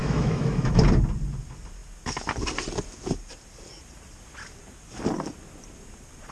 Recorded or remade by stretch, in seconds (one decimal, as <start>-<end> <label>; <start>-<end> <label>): 0.0-0.8 remade; 0.8-6.3 recorded